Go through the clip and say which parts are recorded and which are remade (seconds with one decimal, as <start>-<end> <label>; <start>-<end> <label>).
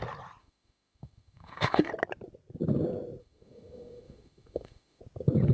0.0-0.4 recorded; 0.4-1.9 remade; 1.9-3.2 recorded; 3.2-5.0 remade; 5.0-5.5 recorded